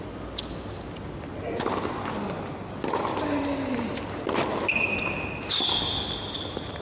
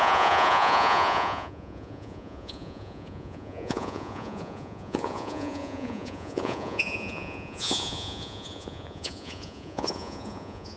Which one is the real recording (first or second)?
first